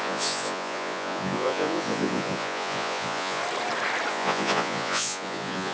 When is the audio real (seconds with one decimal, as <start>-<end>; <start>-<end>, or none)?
3.4-4.1

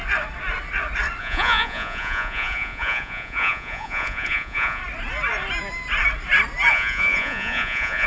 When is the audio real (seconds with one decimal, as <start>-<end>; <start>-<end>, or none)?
0.0-1.2; 4.8-6.7

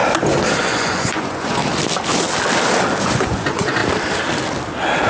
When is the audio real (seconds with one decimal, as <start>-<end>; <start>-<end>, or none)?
0.0-0.6; 1.6-3.0; 3.8-5.1

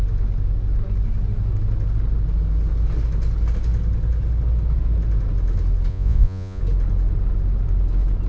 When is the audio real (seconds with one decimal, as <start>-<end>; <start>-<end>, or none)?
0.0-5.9; 6.6-8.3

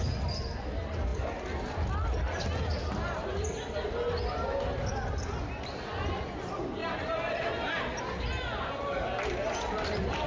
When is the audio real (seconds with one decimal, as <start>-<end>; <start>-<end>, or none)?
0.0-10.3

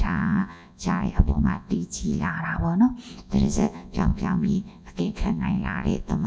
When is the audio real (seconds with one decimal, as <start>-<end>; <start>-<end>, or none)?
2.3-3.1